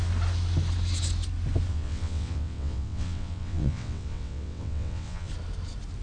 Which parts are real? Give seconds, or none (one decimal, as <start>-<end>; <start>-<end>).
0.0-1.7; 5.3-6.0